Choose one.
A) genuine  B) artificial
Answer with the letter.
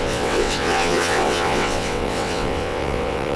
B